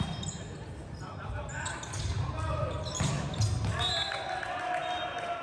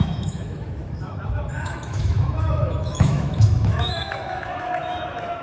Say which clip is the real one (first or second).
first